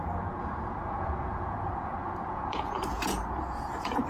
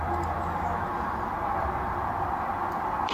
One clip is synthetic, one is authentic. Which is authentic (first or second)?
second